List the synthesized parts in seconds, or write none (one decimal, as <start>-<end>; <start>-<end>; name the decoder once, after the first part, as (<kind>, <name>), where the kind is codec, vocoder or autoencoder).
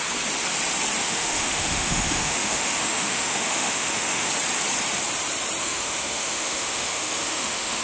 1.0-4.3 (autoencoder, DAC-VAE); 5.6-7.8